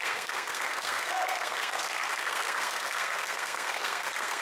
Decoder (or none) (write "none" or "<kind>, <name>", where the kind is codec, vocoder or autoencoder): codec, SNAC